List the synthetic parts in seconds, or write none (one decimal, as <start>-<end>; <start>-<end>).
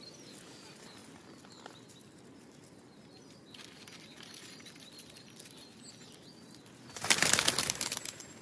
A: 1.0-5.9